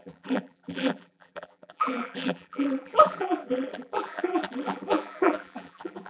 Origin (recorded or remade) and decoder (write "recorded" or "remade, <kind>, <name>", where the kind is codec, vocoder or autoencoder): remade, vocoder, BigVGAN v2